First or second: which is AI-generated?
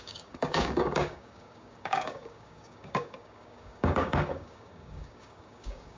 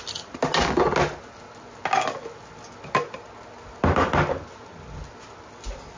first